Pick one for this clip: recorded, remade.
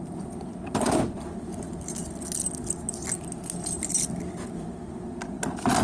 recorded